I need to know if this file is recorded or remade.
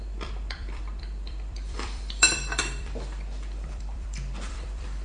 remade